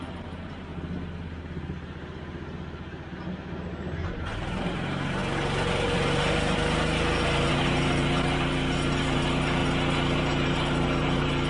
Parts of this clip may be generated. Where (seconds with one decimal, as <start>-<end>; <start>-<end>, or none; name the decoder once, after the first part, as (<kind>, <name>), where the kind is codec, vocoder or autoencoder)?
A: 0.0-0.7 (vocoder, BigVGAN v2); 4.2-5.2; 7.5-9.6; 10.2-11.5